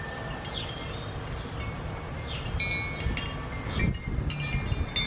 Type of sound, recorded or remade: recorded